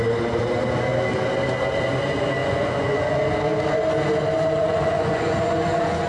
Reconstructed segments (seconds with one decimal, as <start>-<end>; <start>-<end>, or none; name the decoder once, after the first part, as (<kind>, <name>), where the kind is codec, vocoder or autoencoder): 2.4-3.2 (vocoder, Vocos); 4.6-6.1